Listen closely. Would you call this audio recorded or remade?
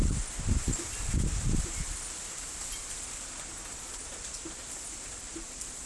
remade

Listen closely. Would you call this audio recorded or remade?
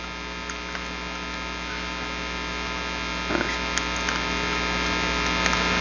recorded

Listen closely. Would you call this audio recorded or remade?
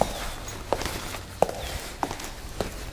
recorded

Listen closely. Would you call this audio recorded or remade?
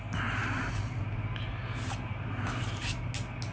recorded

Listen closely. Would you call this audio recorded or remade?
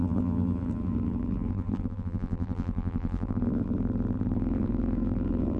remade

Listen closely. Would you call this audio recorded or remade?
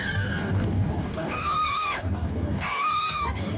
remade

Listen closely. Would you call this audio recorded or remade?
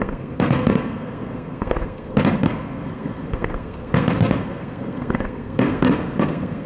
remade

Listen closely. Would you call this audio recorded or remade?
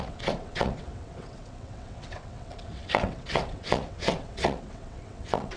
remade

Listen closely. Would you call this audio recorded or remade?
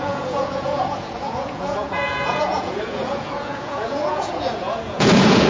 remade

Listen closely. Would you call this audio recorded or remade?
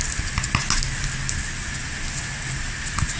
recorded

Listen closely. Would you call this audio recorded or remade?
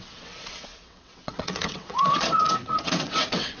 remade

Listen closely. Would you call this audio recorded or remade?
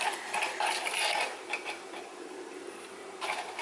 remade